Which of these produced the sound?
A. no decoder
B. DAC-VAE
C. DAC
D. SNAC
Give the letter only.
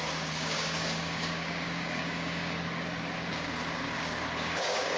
C